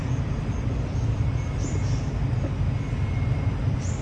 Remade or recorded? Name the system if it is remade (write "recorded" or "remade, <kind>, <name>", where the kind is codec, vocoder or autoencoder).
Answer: recorded